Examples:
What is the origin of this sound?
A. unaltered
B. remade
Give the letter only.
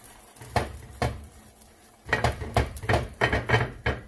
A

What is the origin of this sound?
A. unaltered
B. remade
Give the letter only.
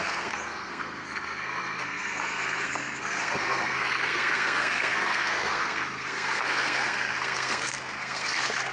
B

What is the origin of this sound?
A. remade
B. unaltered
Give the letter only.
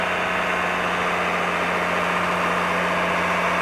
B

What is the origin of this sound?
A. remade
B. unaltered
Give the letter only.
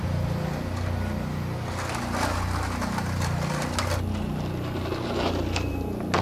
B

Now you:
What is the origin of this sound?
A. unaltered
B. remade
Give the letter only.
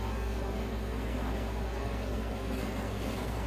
B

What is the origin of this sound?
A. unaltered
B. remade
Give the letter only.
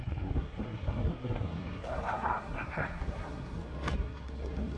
B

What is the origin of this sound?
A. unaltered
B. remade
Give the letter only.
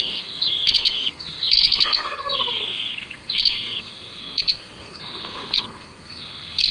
B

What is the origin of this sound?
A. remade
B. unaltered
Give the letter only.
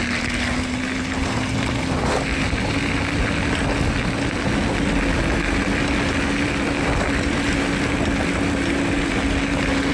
B